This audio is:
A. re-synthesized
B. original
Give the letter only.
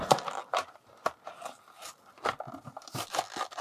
B